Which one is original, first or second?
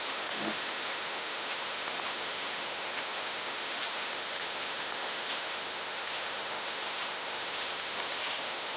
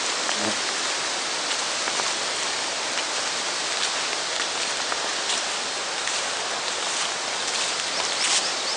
second